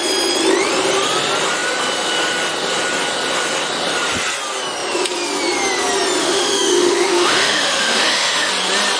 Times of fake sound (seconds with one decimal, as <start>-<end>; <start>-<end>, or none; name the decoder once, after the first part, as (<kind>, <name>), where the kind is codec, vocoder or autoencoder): 6.2-8.5 (autoencoder, DAC-VAE)